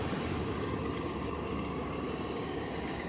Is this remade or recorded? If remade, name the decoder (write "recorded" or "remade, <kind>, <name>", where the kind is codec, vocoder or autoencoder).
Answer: remade, codec, DAC